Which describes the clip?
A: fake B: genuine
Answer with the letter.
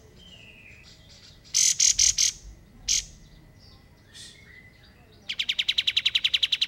B